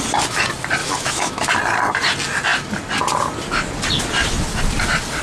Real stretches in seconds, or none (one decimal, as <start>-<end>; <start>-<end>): 0.0-0.8; 1.5-5.2